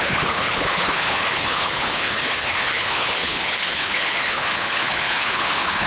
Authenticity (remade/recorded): remade